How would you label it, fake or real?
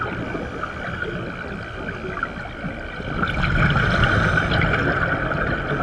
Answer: real